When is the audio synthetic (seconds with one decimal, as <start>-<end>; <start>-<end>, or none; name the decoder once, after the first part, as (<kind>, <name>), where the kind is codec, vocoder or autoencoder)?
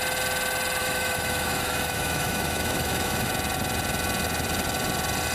0.8-3.3 (autoencoder, DAC-VAE)